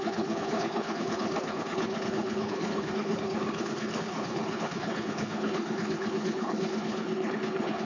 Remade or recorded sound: remade